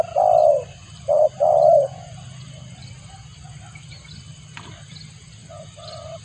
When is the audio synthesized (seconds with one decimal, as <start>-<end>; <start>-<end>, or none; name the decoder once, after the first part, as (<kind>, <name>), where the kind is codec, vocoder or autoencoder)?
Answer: 0.4-4.1 (vocoder, BigVGAN v2); 5.4-6.2